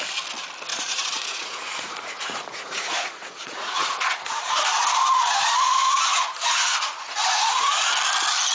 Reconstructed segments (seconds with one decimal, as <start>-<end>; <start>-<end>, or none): 0.7-4.5; 5.8-7.9